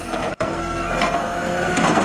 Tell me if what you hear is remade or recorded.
remade